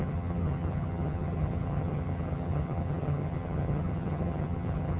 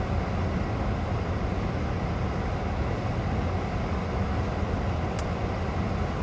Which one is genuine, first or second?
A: second